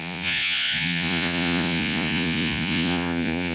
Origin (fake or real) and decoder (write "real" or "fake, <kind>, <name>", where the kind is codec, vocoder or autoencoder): fake, vocoder, Vocos